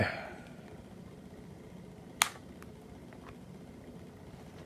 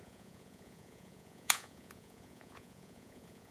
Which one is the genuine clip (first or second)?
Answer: first